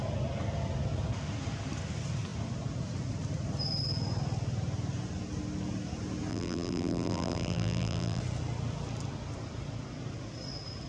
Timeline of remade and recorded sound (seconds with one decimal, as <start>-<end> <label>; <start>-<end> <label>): 0.0-6.3 recorded; 6.3-8.2 remade; 8.2-10.9 recorded